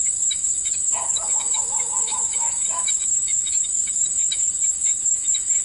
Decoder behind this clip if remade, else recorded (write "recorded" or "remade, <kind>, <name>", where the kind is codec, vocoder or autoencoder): remade, autoencoder, DAC-VAE